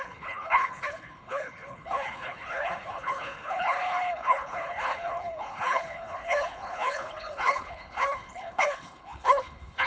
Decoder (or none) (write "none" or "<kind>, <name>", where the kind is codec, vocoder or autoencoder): codec, HILCodec